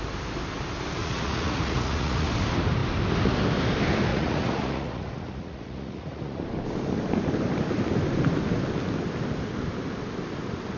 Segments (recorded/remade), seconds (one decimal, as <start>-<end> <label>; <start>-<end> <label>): 0.0-1.0 recorded; 1.0-2.3 remade; 2.3-4.1 recorded; 4.1-6.4 remade; 6.4-10.8 recorded

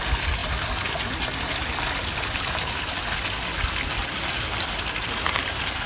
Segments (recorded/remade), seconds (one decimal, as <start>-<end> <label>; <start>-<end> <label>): 0.0-5.9 recorded

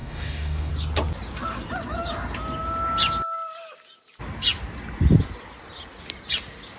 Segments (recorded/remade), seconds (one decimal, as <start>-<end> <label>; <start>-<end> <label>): 0.0-0.7 remade; 0.7-6.8 recorded

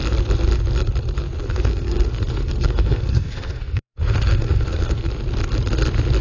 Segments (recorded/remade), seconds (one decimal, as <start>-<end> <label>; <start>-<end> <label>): 0.0-1.4 recorded; 1.4-5.1 remade; 5.1-6.2 recorded

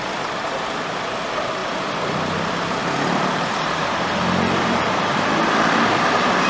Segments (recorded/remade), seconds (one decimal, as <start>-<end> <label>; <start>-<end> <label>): 0.0-6.5 remade

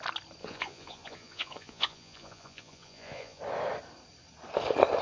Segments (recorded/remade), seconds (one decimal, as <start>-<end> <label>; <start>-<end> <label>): 0.0-0.4 recorded; 0.4-3.4 remade; 3.4-5.0 recorded